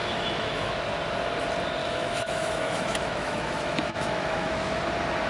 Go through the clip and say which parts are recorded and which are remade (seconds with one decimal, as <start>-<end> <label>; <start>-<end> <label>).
0.0-0.7 remade; 0.7-1.8 recorded; 1.8-4.8 remade; 4.8-5.3 recorded